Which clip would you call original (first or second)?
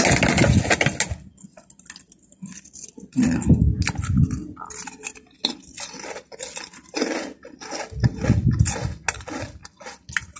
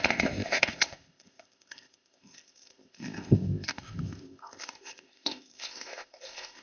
first